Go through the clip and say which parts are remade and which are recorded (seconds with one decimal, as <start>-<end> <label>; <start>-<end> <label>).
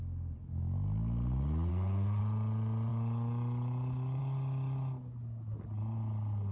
0.0-1.7 recorded; 1.7-2.2 remade; 2.2-6.5 recorded